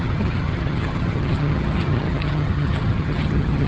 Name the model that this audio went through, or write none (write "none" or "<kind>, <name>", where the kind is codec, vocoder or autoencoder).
vocoder, HiFi-GAN